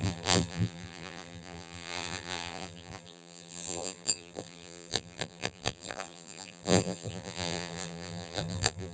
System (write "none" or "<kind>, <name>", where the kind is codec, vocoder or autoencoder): vocoder, BigVGAN v2